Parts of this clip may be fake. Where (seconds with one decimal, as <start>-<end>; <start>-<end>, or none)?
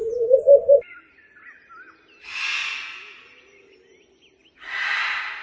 none